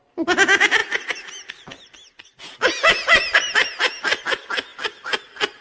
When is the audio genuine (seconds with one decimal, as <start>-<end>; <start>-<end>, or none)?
0.0-5.6

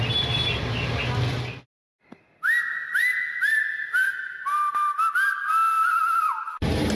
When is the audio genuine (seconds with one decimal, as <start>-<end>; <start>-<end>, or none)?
0.0-6.9

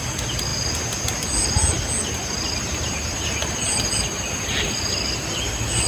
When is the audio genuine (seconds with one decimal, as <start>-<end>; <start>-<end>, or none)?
0.0-5.9

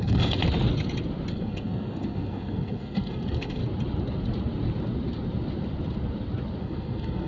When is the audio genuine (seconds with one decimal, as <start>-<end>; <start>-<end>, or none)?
0.4-1.3; 3.6-6.6

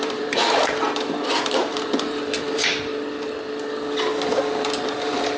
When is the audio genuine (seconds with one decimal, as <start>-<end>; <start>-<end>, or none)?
2.9-4.8

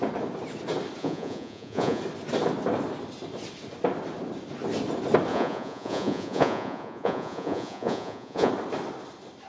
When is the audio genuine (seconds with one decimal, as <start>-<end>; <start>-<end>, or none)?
0.0-1.0; 2.0-5.3; 8.5-9.5

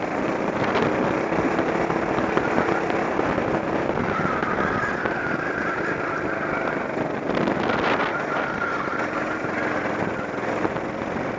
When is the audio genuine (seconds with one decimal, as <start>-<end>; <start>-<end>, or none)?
0.0-11.4